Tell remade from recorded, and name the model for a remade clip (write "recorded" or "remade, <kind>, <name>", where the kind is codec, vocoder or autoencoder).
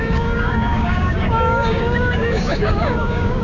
remade, codec, DAC